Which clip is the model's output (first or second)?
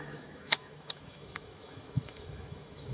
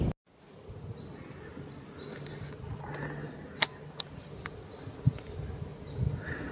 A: first